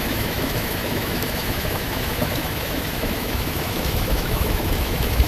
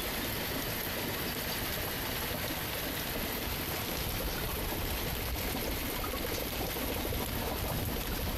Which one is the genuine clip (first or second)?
second